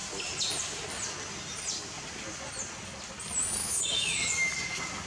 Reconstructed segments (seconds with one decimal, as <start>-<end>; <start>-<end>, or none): 3.6-4.5

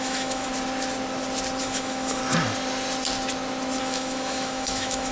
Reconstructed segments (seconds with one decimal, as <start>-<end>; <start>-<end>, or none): 0.0-0.5; 1.6-2.2; 3.8-5.1

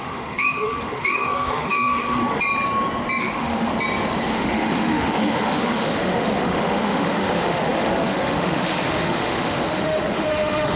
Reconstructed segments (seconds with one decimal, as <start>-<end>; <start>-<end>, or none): 0.0-2.2; 3.2-3.7; 4.3-10.8